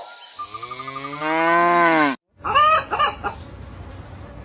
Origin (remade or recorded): recorded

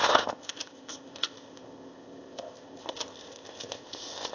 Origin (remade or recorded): remade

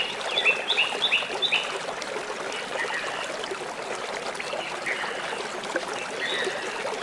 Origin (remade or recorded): recorded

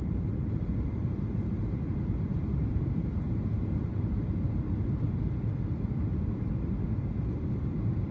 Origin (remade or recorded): remade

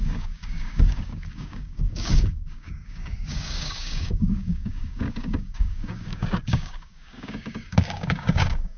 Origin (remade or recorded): remade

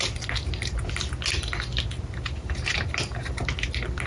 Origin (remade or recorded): recorded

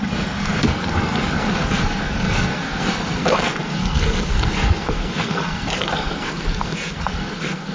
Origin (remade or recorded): remade